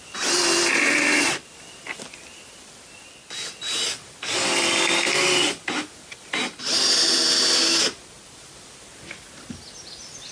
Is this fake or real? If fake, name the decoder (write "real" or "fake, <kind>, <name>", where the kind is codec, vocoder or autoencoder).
real